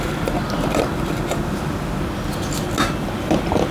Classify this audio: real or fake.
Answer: real